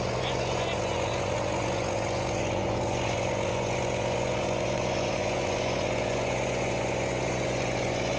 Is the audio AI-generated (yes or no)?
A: yes